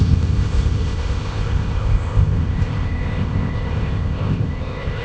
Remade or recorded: remade